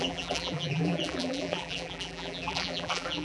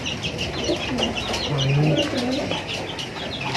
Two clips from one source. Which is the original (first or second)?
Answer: second